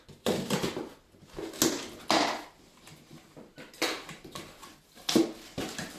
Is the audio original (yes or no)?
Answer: yes